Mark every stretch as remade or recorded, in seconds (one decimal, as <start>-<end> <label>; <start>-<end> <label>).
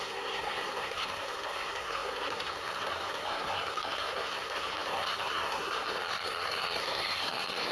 0.0-7.7 remade